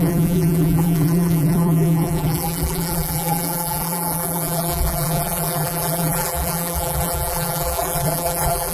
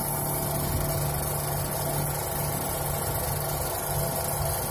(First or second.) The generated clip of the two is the first